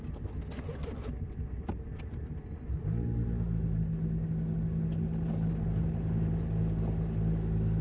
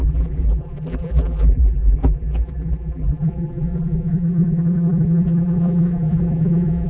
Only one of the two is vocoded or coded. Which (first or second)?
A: second